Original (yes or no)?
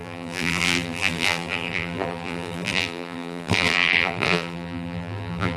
no